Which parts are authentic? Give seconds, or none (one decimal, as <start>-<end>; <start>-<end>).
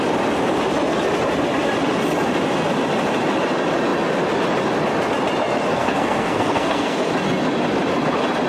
0.0-5.7; 7.1-8.5